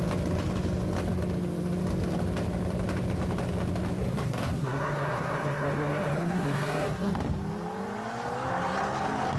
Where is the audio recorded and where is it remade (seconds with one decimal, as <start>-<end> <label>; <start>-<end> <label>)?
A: 0.0-4.0 recorded; 4.0-7.1 remade; 7.1-9.4 recorded